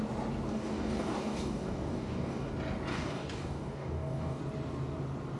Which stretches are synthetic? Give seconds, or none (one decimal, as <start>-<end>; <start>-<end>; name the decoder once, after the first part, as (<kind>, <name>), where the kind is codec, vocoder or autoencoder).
0.5-2.5 (codec, DAC); 2.9-4.4